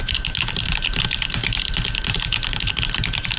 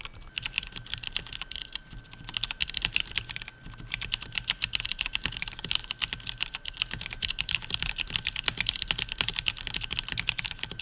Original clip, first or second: second